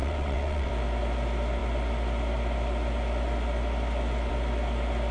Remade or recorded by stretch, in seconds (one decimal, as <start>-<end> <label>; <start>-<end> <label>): 0.0-0.7 remade; 0.7-5.1 recorded